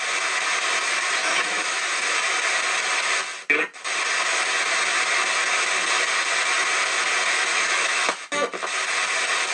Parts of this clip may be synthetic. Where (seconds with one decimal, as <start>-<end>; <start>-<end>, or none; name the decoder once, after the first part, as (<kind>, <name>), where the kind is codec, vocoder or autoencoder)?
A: 1.2-1.8 (autoencoder, DAC-VAE); 7.5-8.1